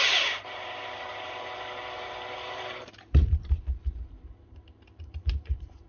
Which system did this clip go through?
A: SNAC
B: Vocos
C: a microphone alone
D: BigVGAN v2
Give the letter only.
D